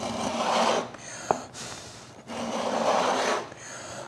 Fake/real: real